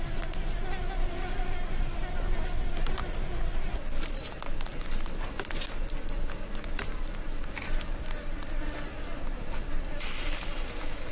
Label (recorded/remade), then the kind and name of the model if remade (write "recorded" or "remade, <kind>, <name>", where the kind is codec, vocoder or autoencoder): recorded